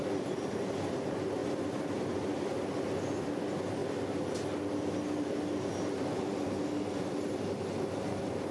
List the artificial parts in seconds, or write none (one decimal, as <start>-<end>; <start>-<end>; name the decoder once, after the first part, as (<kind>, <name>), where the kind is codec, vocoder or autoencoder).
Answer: 1.4-2.0 (vocoder, BigVGAN v2)